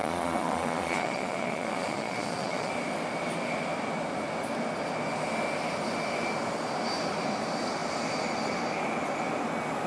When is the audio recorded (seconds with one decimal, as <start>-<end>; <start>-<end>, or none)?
2.7-9.9